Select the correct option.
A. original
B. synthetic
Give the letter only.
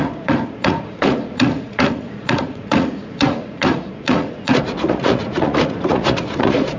B